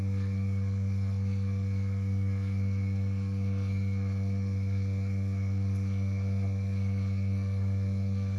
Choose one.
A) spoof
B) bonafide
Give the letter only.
A